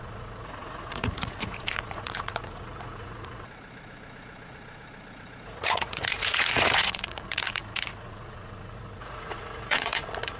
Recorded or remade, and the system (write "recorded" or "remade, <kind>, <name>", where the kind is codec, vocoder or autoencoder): remade, vocoder, Vocos